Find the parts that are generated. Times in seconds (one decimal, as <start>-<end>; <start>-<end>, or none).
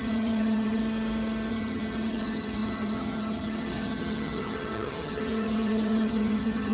0.0-0.8; 1.5-6.7